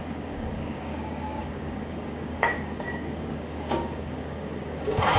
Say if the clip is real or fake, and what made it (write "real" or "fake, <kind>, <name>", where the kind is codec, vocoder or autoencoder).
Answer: fake, codec, DAC